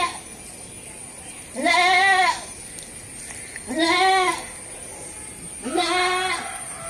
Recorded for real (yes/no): yes